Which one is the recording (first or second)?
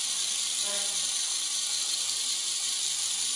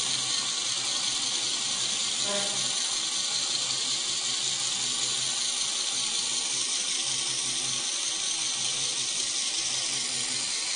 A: second